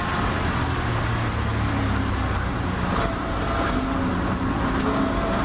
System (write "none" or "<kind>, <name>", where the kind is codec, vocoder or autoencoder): none